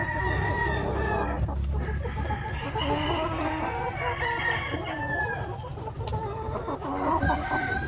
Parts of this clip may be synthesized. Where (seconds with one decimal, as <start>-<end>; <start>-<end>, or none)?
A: none